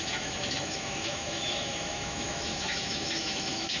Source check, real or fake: fake